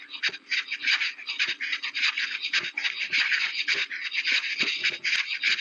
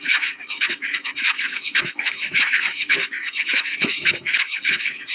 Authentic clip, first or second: first